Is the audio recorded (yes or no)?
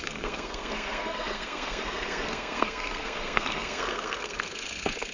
no